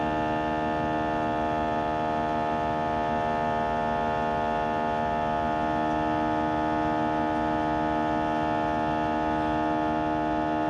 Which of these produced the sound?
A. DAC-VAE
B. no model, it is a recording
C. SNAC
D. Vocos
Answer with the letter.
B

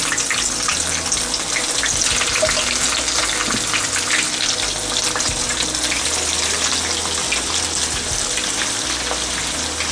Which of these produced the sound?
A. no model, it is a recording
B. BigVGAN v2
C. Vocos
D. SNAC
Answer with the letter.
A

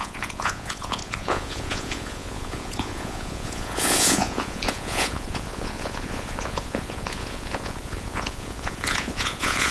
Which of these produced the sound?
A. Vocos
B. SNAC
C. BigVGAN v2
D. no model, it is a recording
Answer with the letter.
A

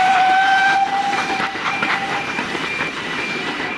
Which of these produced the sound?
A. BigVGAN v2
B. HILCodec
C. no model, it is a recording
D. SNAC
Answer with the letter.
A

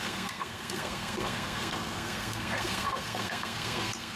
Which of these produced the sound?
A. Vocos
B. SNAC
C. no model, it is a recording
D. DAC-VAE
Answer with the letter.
B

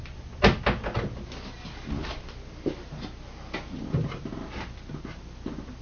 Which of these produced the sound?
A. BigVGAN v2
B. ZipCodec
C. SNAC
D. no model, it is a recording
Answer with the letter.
D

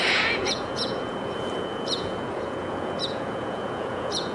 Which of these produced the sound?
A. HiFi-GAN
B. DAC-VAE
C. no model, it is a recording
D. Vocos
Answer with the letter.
D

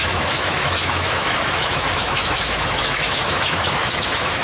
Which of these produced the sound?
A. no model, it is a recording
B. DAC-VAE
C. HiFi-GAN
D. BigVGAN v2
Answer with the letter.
B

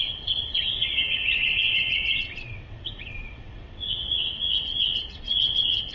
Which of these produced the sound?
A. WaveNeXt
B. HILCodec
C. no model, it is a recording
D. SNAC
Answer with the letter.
A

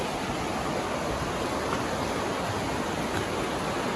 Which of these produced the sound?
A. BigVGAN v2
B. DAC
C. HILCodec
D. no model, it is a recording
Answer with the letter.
D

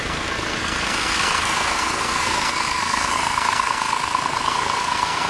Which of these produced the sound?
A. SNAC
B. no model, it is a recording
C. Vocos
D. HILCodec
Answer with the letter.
A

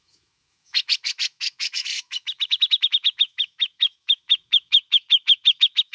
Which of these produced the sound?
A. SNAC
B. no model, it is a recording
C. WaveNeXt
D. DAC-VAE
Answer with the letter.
D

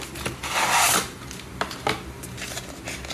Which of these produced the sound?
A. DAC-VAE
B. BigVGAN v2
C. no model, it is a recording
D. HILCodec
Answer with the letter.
C